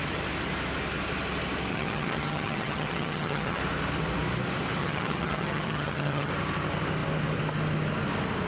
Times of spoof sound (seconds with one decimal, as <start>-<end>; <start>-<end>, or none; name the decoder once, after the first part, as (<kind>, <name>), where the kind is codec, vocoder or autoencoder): 1.7-3.6 (vocoder, HiFi-GAN); 4.8-6.3